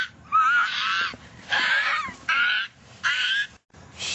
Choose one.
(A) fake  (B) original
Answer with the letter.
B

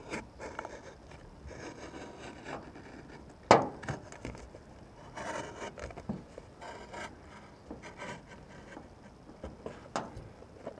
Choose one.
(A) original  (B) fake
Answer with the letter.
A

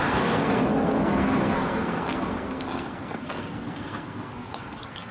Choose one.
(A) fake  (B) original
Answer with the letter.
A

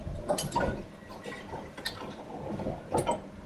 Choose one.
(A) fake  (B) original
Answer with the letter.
B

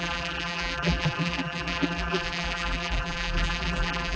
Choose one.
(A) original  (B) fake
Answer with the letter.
B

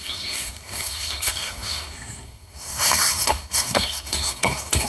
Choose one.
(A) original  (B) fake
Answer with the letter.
B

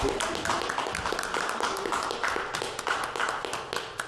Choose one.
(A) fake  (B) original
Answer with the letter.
B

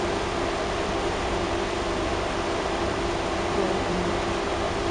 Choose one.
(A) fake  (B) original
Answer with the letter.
A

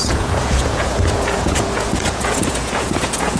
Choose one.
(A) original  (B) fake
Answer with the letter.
B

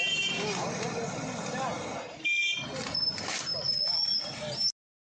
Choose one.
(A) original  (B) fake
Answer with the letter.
A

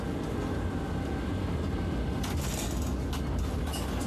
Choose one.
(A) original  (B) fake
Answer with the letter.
A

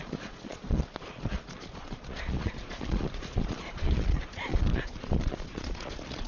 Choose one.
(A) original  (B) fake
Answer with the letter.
B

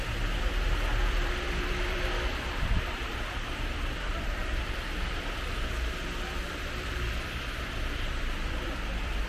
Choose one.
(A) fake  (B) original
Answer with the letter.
A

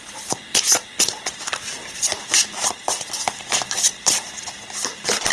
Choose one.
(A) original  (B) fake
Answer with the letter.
A